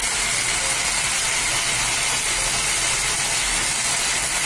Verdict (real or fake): real